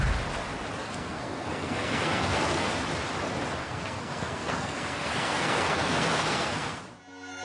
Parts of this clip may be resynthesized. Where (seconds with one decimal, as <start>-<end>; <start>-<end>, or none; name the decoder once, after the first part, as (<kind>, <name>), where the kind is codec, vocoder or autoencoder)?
0.8-2.7 (codec, SNAC); 3.6-6.8